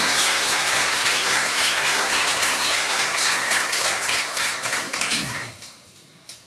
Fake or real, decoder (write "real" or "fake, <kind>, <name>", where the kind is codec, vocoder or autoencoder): fake, codec, SNAC